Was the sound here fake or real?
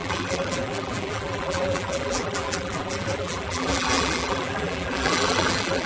fake